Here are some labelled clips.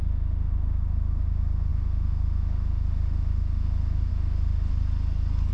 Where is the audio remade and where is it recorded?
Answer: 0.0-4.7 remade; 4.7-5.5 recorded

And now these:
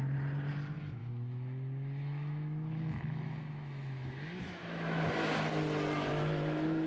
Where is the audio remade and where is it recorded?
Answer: 0.0-1.0 recorded; 1.0-5.1 remade; 5.1-6.1 recorded; 6.1-6.9 remade

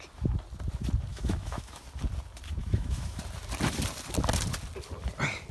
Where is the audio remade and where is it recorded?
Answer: 0.0-1.1 recorded; 1.1-1.8 remade; 1.8-2.6 recorded; 2.6-3.2 remade; 3.2-5.5 recorded

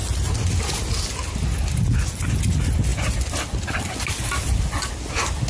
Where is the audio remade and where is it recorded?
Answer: 0.0-5.5 recorded

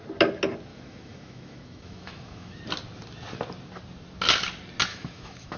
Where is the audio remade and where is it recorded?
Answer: 0.0-0.7 recorded; 0.7-2.6 remade; 2.6-4.9 recorded; 4.9-5.6 remade

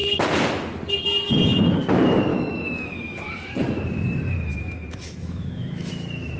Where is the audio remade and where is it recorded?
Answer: 0.0-2.3 recorded; 2.3-3.5 remade; 3.5-4.5 recorded; 4.5-5.9 remade; 5.9-6.4 recorded

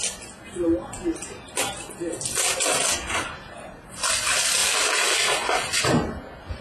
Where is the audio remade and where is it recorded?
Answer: 0.0-6.6 recorded

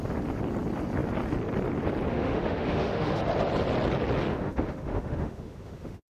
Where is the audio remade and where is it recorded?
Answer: 0.0-2.1 recorded; 2.1-3.2 remade; 3.2-4.3 recorded; 4.3-6.1 remade